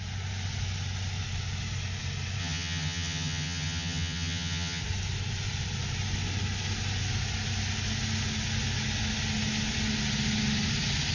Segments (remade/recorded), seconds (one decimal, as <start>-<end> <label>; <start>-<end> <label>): 0.0-2.4 recorded; 2.4-4.8 remade; 4.8-11.1 recorded